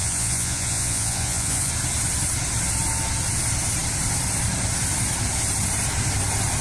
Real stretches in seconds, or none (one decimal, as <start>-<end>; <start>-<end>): 1.7-6.6